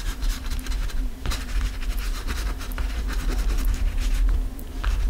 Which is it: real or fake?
fake